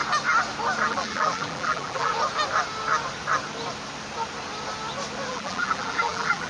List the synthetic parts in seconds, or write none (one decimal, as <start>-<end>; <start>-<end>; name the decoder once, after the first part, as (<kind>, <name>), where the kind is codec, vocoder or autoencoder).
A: 0.9-2.1 (vocoder, BigVGAN v2); 5.3-6.5